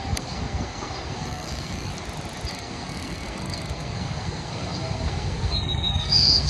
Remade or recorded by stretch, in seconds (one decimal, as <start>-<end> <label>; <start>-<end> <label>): 0.0-1.9 remade; 1.9-2.5 recorded; 2.5-6.5 remade